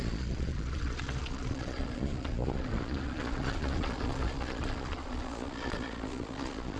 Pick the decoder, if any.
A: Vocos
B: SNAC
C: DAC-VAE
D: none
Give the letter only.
A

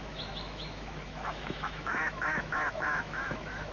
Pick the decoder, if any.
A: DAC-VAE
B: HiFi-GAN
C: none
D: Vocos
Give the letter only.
A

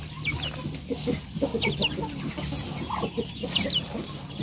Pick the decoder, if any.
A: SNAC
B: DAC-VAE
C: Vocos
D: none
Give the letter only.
D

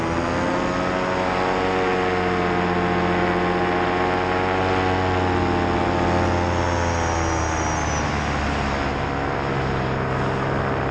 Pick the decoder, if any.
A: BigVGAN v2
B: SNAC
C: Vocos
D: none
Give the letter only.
D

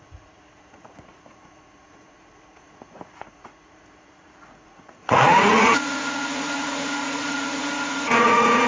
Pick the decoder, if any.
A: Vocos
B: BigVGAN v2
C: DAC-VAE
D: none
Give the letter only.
A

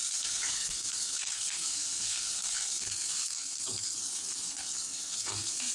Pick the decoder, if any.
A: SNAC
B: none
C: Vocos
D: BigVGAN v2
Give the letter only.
A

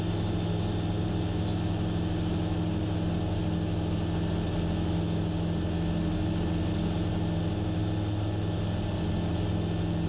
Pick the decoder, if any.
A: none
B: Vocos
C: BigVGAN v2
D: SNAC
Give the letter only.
A